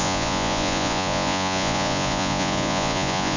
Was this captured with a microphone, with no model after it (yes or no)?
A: no